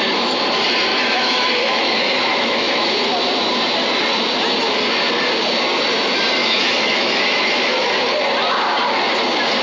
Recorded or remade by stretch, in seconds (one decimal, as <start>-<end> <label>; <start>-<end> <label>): 0.0-0.9 recorded; 0.9-2.9 remade; 2.9-6.4 recorded; 6.4-7.2 remade; 7.2-9.6 recorded